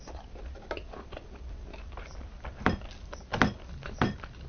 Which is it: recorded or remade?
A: recorded